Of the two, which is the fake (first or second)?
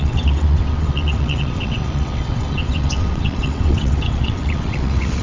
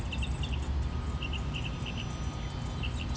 first